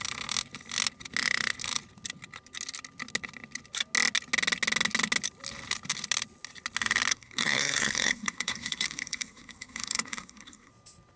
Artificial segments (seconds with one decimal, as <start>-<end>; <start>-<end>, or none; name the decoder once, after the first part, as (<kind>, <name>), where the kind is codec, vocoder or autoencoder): 7.1-10.7 (codec, SNAC)